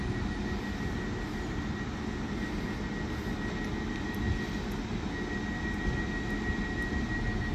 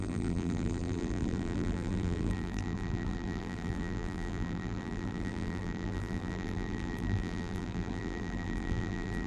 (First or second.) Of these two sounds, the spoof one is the second